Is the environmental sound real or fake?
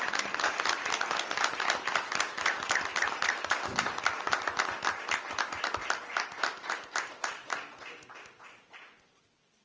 real